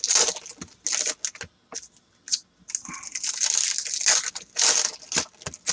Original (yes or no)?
yes